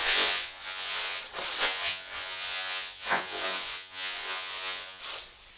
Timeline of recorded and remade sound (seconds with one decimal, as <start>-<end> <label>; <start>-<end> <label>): 0.0-1.2 remade; 1.2-1.6 recorded; 1.6-5.0 remade; 5.0-5.6 recorded